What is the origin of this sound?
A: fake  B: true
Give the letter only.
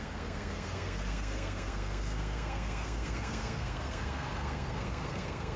A